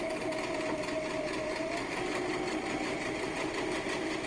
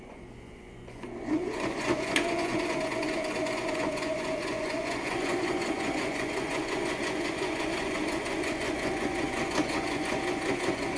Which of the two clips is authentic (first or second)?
first